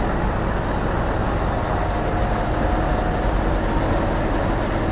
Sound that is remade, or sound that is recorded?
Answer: recorded